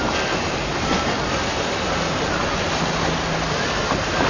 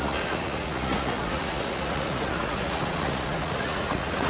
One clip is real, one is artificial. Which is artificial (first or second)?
second